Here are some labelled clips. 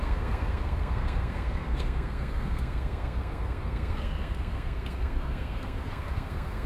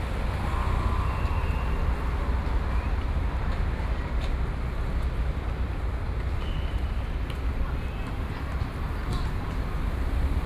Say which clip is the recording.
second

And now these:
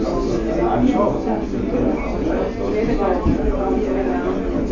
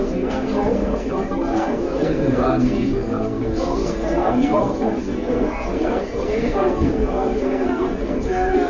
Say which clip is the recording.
first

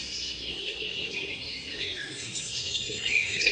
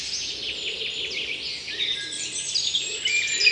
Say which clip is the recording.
second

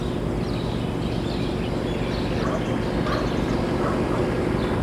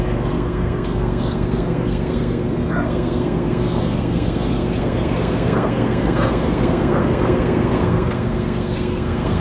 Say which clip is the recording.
first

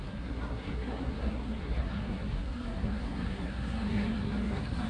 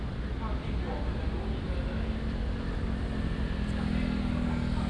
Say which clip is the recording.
second